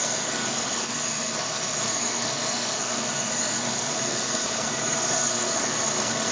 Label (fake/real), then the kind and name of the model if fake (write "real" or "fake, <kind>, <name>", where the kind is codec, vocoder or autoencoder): fake, codec, SNAC